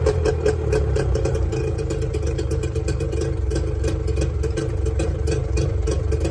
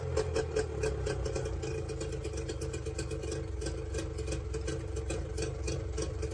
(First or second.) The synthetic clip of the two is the first